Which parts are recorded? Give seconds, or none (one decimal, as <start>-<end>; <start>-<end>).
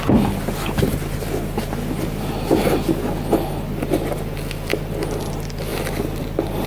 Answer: 0.0-6.7